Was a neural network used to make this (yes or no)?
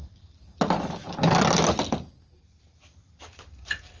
no